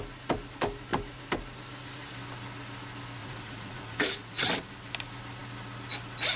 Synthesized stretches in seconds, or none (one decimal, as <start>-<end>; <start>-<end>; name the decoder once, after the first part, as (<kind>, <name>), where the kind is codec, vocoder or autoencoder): 3.2-4.5 (vocoder, Vocos)